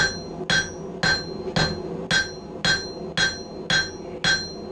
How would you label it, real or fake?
real